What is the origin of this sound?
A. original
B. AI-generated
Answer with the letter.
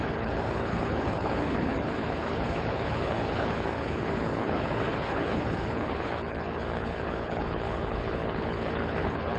B